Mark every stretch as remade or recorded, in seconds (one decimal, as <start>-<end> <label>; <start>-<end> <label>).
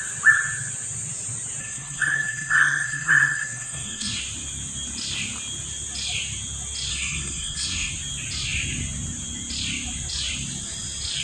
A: 0.0-1.6 recorded; 1.6-4.2 remade; 4.2-6.9 recorded; 6.9-7.9 remade; 7.9-11.2 recorded